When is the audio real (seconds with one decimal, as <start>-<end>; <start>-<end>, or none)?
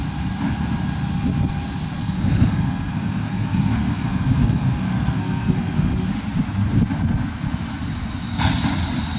0.0-2.0; 5.9-9.2